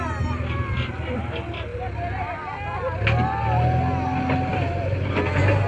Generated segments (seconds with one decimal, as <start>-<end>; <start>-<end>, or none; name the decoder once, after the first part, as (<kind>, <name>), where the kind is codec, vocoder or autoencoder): 1.7-2.3 (vocoder, BigVGAN v2); 4.5-5.1